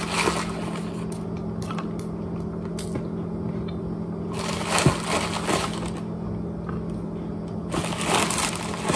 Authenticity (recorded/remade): recorded